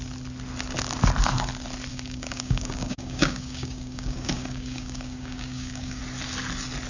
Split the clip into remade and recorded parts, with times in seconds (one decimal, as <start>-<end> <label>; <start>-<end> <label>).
0.0-1.9 recorded; 1.9-6.0 remade; 6.0-6.9 recorded